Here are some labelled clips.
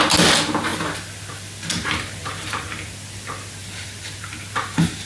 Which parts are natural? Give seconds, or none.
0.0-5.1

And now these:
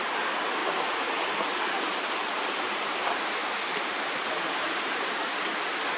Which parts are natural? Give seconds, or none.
0.0-0.6; 1.3-1.9; 5.5-6.0

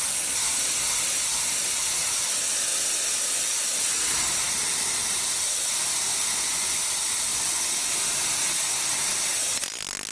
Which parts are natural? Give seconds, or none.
0.0-6.1; 6.8-7.3; 7.9-10.1

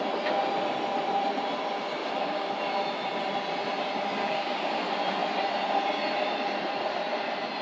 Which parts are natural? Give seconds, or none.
0.0-2.0; 2.5-4.2; 4.8-7.6

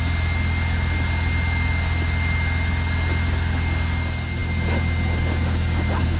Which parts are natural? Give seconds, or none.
0.0-6.2

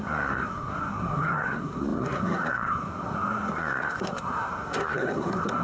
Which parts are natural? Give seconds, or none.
none

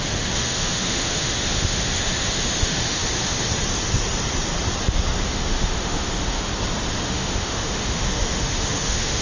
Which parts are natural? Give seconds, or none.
3.0-5.2; 6.5-7.0